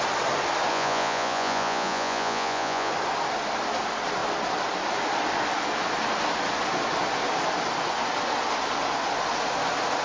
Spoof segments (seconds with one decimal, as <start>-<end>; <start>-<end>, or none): 0.7-2.9